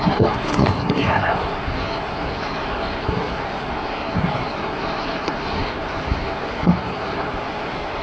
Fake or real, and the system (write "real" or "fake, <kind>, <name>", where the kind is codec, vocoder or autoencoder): fake, codec, SNAC